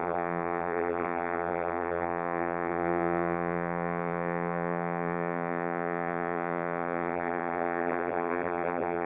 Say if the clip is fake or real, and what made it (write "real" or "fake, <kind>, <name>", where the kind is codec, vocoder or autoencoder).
fake, vocoder, BigVGAN v2